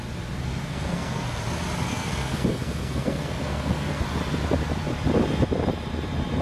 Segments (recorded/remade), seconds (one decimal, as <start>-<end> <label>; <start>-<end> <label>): 0.0-0.6 recorded; 0.6-1.4 remade; 1.4-1.9 recorded; 1.9-4.0 remade; 4.0-6.4 recorded